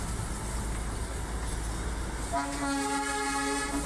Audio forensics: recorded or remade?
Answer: recorded